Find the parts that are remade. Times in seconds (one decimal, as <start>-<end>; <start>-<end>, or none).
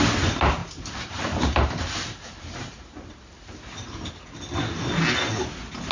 0.6-4.1